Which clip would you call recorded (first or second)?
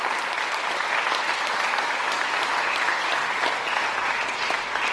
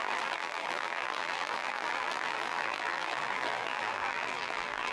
first